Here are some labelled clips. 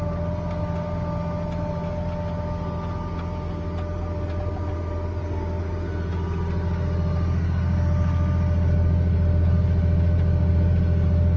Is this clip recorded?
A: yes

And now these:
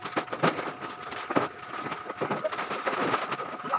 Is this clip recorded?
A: yes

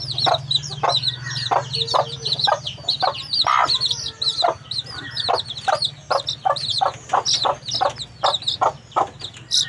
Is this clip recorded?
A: yes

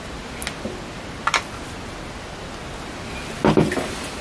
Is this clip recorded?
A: yes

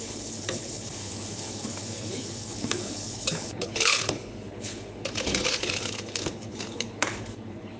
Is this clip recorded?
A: no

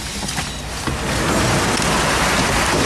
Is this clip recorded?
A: yes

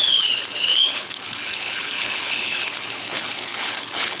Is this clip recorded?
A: no